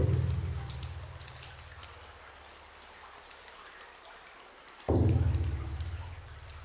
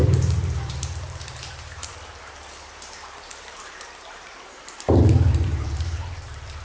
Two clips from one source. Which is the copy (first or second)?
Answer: second